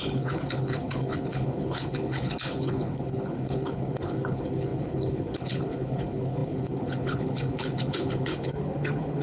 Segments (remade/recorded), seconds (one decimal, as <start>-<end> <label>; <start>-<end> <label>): 0.0-9.2 remade

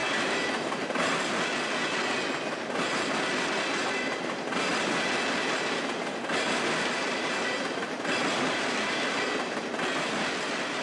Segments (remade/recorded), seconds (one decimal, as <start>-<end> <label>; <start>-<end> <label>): 0.0-10.8 recorded